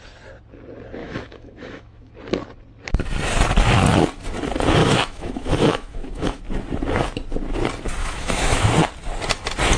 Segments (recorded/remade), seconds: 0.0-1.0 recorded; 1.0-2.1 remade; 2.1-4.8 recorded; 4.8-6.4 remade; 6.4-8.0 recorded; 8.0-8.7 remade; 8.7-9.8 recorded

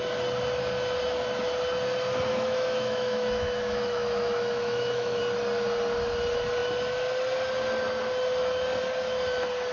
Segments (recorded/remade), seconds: 0.0-2.3 recorded; 2.3-5.2 remade; 5.2-9.7 recorded